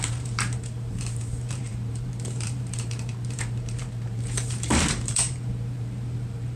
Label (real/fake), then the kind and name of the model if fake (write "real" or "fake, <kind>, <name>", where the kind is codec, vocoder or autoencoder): fake, vocoder, BigVGAN v2